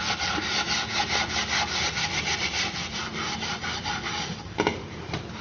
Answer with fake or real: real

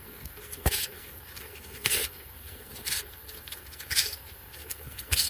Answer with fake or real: fake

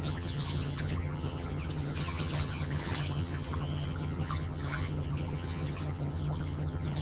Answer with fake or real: fake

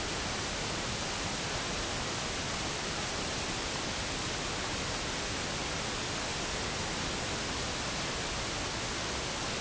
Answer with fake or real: real